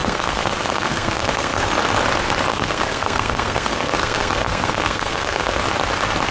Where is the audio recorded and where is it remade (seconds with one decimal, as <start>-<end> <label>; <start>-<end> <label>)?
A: 0.0-1.7 remade; 1.7-2.5 recorded; 2.5-5.6 remade; 5.6-6.3 recorded